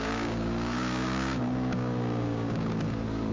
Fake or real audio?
fake